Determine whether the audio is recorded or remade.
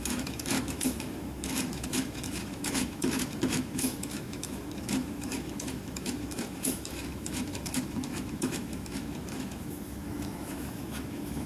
remade